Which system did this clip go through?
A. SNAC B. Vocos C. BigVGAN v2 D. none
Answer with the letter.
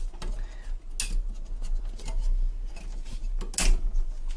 D